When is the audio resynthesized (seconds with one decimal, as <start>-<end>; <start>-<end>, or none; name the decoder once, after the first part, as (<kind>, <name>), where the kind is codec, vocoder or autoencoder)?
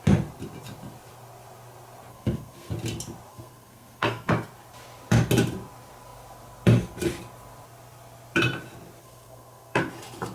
2.1-2.7 (codec, SNAC); 3.3-4.3; 9.0-9.9